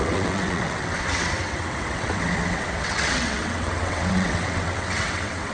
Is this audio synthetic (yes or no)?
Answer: yes